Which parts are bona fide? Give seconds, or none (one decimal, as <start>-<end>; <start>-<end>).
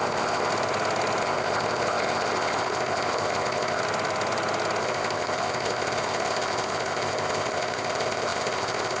0.5-1.2; 3.8-4.8